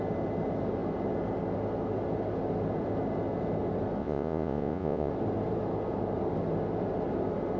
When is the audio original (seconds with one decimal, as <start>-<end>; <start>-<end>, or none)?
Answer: 0.0-4.0; 5.1-7.6